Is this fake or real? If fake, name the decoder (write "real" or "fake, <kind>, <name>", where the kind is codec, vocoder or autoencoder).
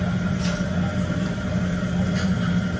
real